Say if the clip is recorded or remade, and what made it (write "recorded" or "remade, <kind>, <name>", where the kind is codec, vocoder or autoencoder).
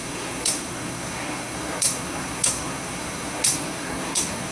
remade, codec, SNAC